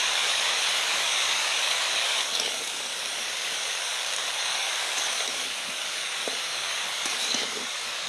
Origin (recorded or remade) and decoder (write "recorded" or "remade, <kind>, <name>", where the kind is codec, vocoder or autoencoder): remade, codec, DAC